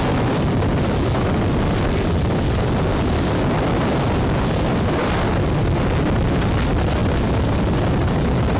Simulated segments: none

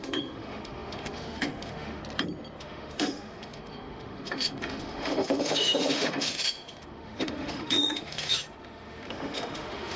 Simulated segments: 0.0-2.0; 2.6-10.0

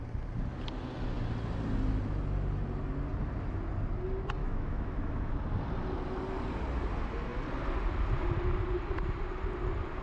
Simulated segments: 4.4-5.3

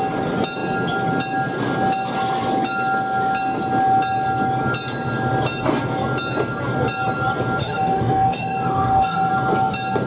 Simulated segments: 7.6-9.3

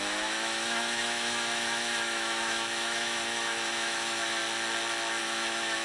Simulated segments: 0.0-4.4; 5.2-5.8

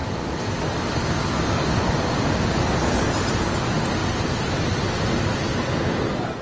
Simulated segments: none